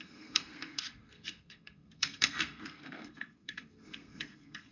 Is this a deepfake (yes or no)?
yes